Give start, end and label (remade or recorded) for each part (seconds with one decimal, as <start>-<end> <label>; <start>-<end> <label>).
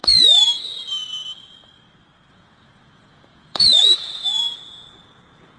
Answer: 0.0-2.3 recorded; 2.3-5.6 remade